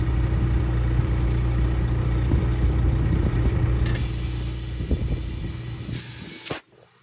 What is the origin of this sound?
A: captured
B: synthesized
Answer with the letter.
A